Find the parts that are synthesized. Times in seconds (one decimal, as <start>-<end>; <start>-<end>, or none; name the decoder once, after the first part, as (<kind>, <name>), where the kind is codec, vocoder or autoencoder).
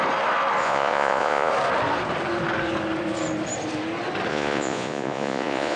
0.6-1.5 (vocoder, Vocos); 4.3-5.8